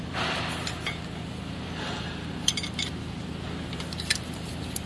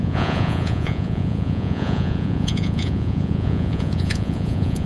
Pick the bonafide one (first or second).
first